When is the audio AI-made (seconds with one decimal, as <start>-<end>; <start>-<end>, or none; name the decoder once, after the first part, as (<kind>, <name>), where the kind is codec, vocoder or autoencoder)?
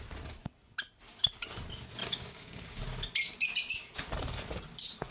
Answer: 2.0-2.8 (codec, DAC)